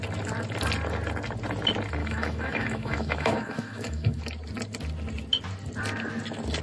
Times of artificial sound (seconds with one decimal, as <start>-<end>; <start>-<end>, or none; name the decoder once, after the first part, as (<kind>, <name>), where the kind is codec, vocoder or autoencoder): 2.0-4.2 (autoencoder, DAC-VAE)